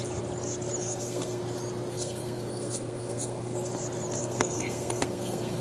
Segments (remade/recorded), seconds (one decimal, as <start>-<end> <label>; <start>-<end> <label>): 0.0-0.8 recorded; 0.8-1.4 remade; 1.4-1.9 recorded; 1.9-3.7 remade; 3.7-4.2 recorded; 4.2-5.6 remade